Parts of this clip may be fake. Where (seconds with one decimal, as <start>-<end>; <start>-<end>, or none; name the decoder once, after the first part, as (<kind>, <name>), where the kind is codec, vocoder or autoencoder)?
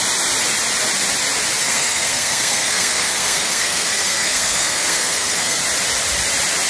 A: 1.6-5.6 (codec, SNAC)